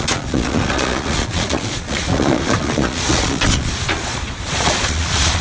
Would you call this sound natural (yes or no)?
no